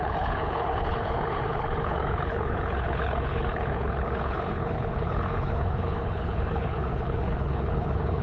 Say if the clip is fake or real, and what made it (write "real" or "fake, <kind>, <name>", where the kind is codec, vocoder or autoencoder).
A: fake, codec, HILCodec